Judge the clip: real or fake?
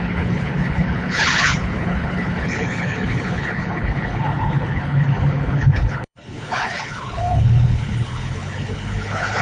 fake